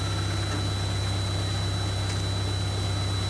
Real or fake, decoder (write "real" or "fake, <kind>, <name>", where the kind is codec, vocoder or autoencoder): real